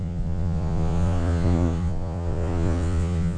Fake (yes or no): yes